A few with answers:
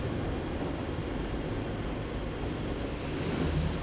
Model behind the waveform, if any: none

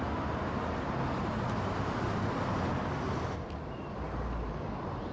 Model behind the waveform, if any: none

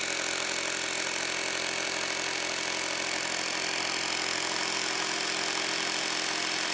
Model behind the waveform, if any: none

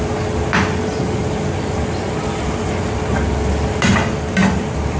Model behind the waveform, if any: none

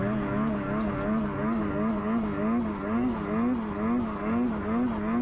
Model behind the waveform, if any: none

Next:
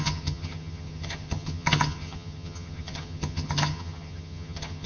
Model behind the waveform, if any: vocoder, HiFi-GAN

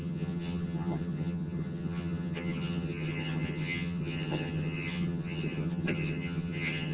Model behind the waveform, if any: vocoder, HiFi-GAN